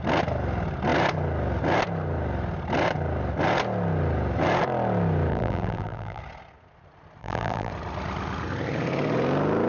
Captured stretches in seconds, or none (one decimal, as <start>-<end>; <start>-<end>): 0.0-5.3; 6.2-7.2; 7.7-9.7